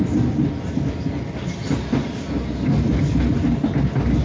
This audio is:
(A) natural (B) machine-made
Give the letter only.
A